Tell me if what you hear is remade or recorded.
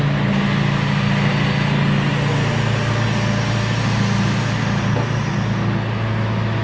recorded